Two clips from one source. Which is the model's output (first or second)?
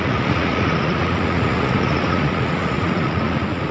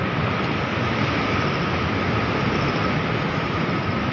first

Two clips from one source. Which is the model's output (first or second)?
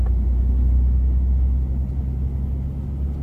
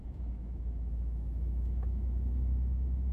second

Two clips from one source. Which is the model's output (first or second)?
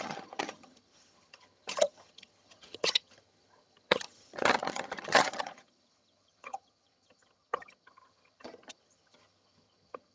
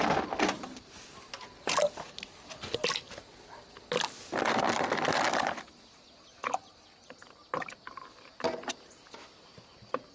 first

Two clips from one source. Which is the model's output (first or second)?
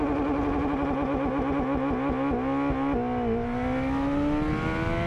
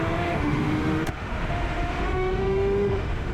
second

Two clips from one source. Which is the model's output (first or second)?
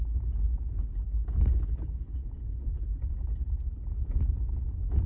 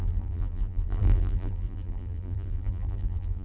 second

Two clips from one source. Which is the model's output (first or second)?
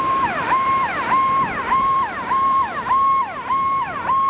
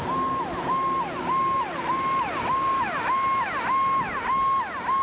first